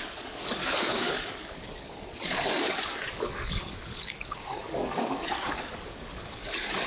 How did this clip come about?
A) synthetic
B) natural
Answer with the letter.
A